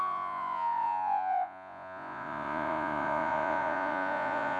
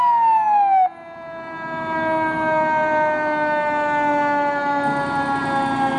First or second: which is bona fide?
second